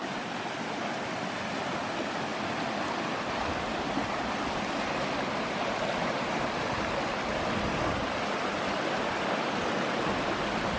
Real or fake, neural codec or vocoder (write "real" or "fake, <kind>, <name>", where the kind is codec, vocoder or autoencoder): real